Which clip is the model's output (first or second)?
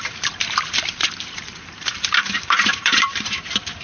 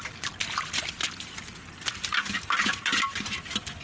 first